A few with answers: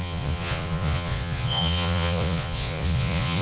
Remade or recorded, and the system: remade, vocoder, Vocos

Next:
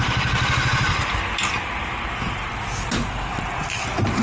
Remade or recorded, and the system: recorded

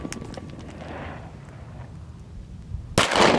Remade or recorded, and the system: recorded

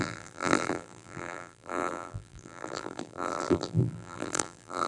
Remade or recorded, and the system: remade, vocoder, BigVGAN v2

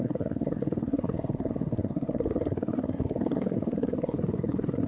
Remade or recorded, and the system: remade, codec, SNAC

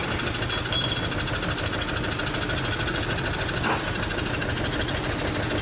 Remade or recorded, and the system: recorded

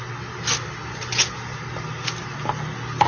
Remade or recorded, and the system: recorded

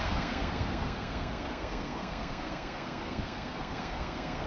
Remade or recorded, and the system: remade, codec, SNAC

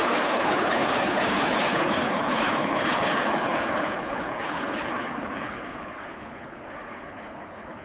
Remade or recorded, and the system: remade, codec, HILCodec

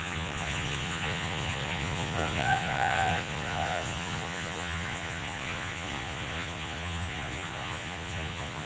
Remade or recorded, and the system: remade, vocoder, Vocos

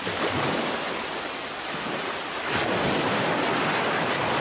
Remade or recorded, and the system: recorded